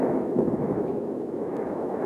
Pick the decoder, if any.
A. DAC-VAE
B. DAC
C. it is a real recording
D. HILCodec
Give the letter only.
A